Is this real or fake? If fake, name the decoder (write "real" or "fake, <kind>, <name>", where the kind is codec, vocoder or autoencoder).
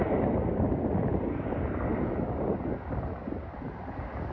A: real